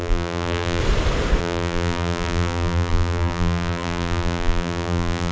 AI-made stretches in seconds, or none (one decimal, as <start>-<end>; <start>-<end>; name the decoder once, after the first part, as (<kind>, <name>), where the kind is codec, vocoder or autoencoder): 0.0-0.8 (vocoder, BigVGAN v2); 1.4-5.3